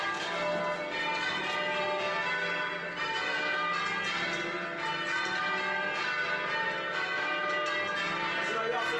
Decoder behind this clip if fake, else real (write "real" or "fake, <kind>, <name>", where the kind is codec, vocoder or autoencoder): real